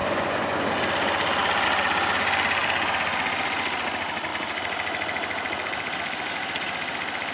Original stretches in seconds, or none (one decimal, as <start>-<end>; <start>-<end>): 0.7-7.3